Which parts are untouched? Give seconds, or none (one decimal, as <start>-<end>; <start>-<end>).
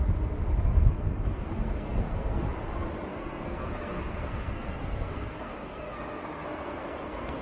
0.0-0.8; 2.5-3.1